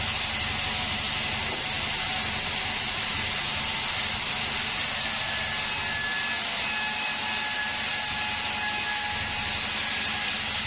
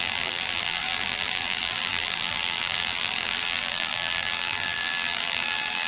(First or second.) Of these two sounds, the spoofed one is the second